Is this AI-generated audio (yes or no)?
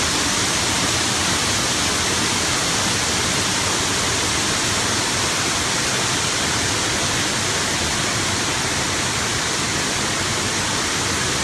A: no